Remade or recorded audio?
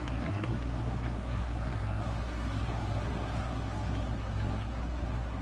remade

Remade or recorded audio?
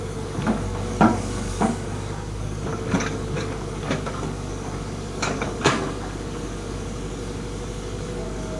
remade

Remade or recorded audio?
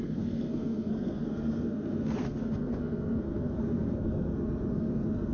remade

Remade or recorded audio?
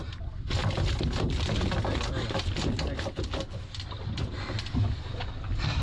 recorded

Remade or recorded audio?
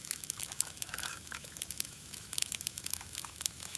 remade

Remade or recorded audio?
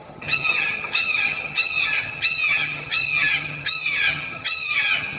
remade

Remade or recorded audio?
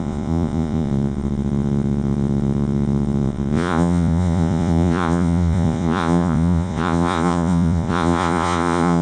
remade